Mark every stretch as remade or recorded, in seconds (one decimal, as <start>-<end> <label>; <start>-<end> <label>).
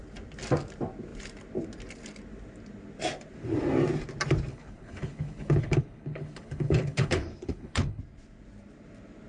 0.0-4.5 recorded; 4.5-8.0 remade; 8.0-9.3 recorded